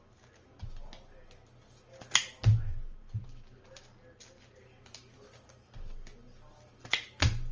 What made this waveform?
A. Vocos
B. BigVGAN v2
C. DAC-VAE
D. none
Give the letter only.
D